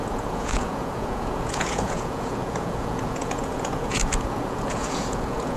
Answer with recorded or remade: remade